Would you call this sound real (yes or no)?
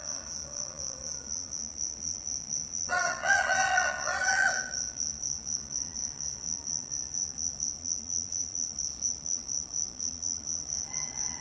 no